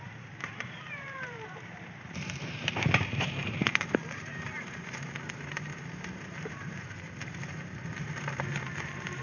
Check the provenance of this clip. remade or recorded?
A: remade